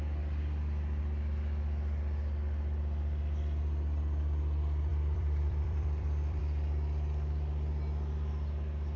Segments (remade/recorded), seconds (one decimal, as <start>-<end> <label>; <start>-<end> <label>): 0.0-4.9 recorded; 4.9-6.4 remade; 6.4-9.0 recorded